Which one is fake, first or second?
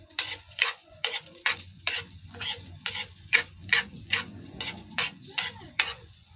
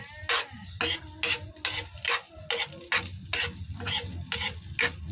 first